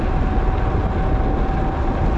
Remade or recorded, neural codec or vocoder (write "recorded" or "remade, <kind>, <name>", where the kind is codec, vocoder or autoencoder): recorded